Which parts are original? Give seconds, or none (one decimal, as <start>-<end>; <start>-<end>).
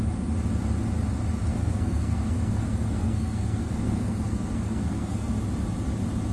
0.0-1.5; 5.3-6.3